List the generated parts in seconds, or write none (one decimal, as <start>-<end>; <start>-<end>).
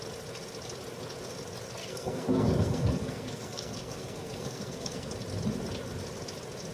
1.8-5.1